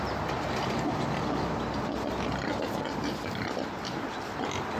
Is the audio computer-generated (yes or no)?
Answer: no